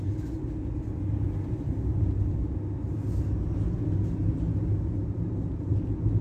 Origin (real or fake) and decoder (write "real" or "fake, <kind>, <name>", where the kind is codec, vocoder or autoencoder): real